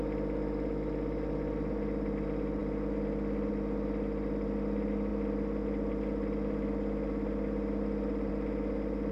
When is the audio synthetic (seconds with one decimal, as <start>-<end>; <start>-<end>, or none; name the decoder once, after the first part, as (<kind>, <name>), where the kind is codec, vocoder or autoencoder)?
none